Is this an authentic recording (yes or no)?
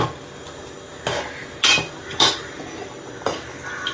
no